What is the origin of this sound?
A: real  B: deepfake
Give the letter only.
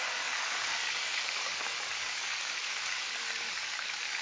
B